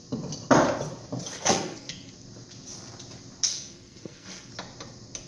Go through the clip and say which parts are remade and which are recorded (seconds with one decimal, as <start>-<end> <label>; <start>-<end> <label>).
0.0-1.3 recorded; 1.3-2.1 remade; 2.1-3.5 recorded; 3.5-4.5 remade; 4.5-5.3 recorded